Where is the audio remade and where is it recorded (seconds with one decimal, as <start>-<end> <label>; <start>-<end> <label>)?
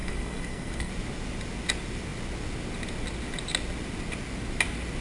0.0-0.9 remade; 0.9-5.0 recorded